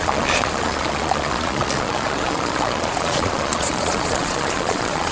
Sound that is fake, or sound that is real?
fake